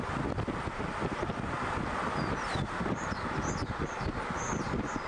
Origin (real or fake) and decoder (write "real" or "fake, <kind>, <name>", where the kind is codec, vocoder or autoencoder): real